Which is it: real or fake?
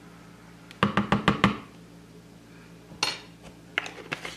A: real